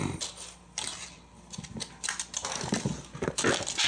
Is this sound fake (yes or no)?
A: no